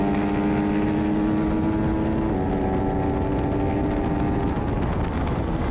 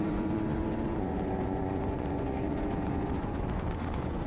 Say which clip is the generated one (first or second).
second